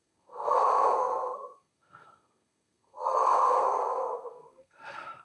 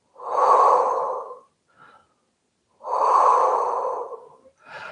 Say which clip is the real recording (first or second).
second